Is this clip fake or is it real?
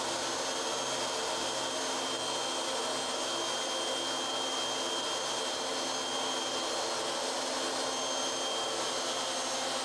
real